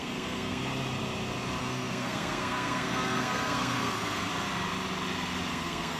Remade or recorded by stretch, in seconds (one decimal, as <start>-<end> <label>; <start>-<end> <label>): 0.0-0.7 remade; 0.7-1.6 recorded; 1.6-4.3 remade; 4.3-5.5 recorded; 5.5-6.0 remade